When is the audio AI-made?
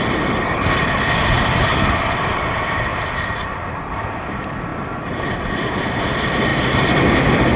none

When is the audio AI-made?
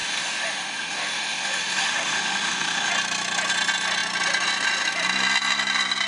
0.0-2.9 (autoencoder, DAC-VAE)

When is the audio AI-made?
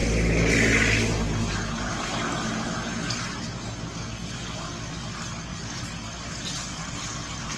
none